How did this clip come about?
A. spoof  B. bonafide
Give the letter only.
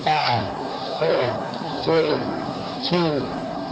A